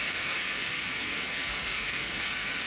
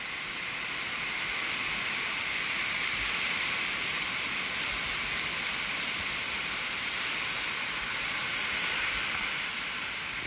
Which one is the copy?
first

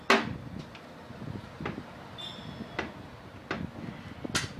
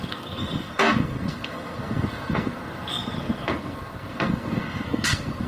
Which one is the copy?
second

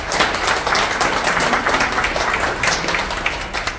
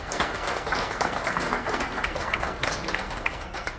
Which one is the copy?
second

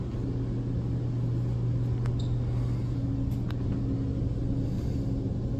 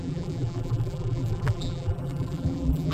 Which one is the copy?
second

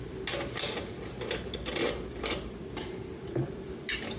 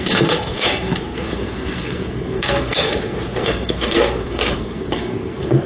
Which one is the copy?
second